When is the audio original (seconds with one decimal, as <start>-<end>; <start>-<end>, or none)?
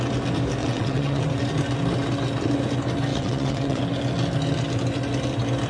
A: 0.0-0.6; 1.2-3.1; 3.8-5.7